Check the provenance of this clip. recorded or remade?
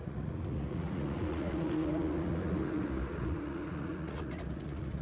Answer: remade